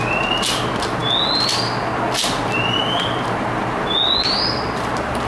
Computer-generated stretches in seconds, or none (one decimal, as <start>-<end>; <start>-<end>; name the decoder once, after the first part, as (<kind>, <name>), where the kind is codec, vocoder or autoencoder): none